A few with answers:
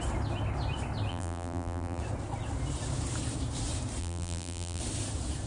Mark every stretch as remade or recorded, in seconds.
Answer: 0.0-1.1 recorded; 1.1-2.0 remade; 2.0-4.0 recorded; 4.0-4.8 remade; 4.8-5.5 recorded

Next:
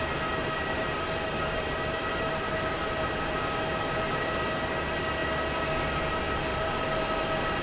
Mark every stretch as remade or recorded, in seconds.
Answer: 0.0-0.4 recorded; 0.4-4.5 remade; 4.5-6.5 recorded; 6.5-7.1 remade; 7.1-7.6 recorded

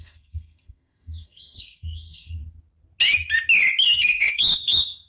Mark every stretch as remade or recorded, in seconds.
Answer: 0.0-2.4 remade; 2.4-3.8 recorded; 3.8-5.1 remade